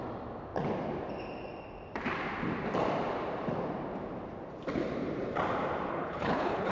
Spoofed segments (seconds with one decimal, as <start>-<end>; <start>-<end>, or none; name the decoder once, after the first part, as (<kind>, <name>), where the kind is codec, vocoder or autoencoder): 5.9-6.7 (codec, HILCodec)